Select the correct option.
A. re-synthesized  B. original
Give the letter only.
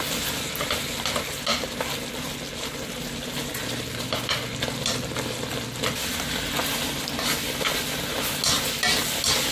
B